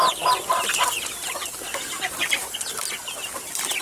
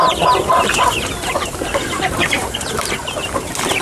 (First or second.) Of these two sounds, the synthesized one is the second